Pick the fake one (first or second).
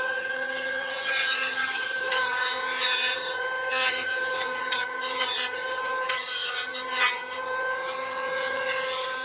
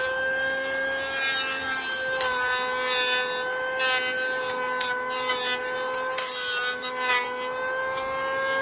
first